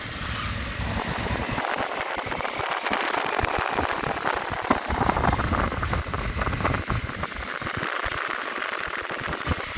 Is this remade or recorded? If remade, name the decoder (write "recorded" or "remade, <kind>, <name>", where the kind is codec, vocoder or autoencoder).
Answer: recorded